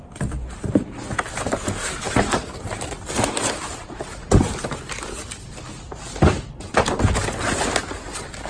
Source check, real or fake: real